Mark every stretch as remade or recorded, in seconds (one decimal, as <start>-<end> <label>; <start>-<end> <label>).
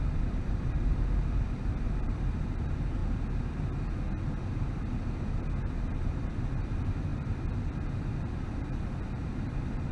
0.0-3.0 remade; 3.0-6.0 recorded; 6.0-9.9 remade